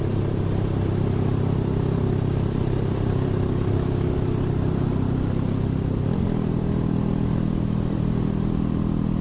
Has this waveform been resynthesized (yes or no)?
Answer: no